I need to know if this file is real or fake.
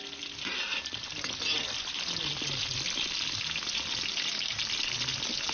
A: real